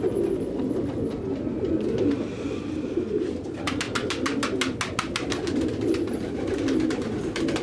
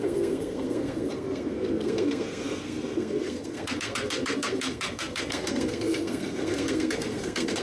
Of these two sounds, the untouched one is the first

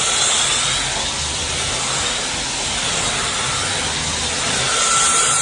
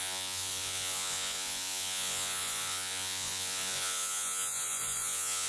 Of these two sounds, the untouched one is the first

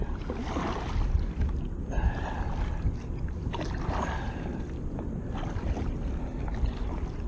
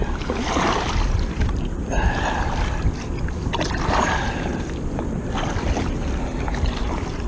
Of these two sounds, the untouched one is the first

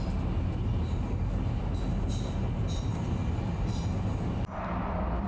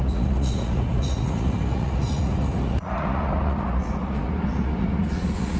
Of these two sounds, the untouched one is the first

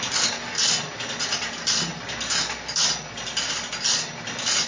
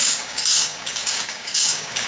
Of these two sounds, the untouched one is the first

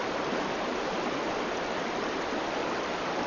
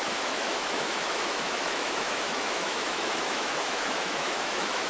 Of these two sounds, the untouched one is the first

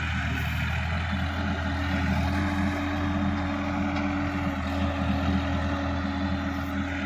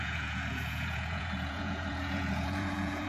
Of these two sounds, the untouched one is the first